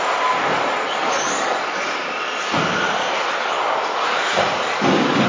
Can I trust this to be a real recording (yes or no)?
yes